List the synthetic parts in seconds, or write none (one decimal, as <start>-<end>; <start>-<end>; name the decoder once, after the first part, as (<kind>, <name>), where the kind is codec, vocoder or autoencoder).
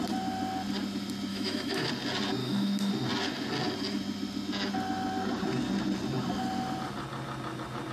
1.3-1.9 (autoencoder, DAC-VAE); 2.4-2.9